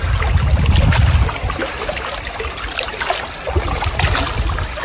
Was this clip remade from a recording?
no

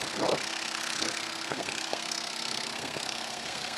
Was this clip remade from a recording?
yes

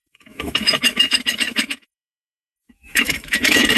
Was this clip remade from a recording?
yes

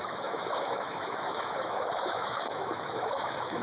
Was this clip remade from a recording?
yes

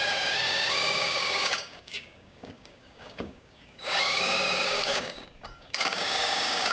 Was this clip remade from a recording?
yes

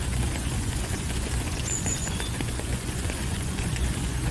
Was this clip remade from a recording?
yes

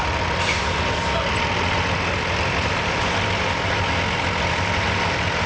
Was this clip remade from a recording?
no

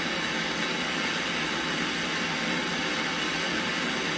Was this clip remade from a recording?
no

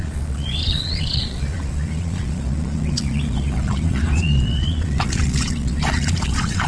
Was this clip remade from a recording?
yes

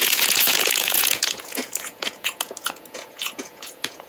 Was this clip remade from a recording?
yes